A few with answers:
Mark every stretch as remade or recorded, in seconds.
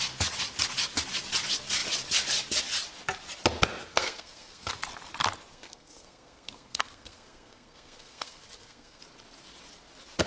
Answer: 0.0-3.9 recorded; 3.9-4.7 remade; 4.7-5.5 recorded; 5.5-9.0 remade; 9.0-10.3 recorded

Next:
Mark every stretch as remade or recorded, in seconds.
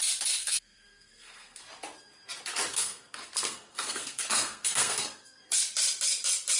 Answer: 0.0-0.4 recorded; 0.4-1.6 remade; 1.6-2.7 recorded; 2.7-5.4 remade; 5.4-6.6 recorded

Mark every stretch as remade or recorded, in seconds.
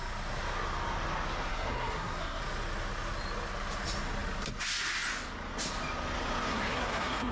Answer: 0.0-1.5 recorded; 1.5-2.4 remade; 2.4-6.5 recorded; 6.5-7.3 remade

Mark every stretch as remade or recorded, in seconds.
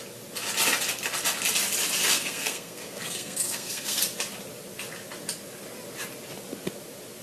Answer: 0.0-2.1 recorded; 2.1-4.0 remade; 4.0-7.2 recorded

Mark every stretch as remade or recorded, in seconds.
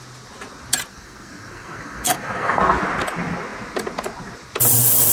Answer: 0.0-0.9 recorded; 0.9-2.6 remade; 2.6-5.1 recorded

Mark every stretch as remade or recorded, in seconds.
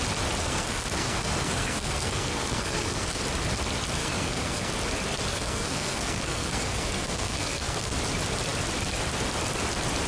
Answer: 0.0-0.4 recorded; 0.4-3.2 remade; 3.2-4.0 recorded; 4.0-4.7 remade; 4.7-5.3 recorded; 5.3-7.9 remade; 7.9-10.1 recorded